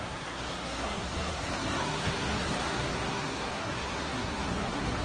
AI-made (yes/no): yes